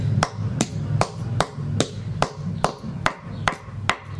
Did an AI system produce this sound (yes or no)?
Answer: no